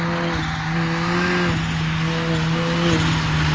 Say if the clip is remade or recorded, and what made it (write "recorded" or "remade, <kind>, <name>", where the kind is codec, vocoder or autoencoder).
recorded